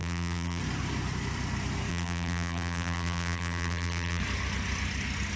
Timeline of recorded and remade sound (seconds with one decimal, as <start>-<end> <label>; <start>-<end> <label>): 0.0-0.6 remade; 0.6-1.9 recorded; 1.9-4.2 remade; 4.2-5.4 recorded